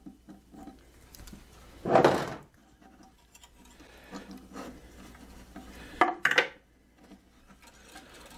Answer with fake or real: real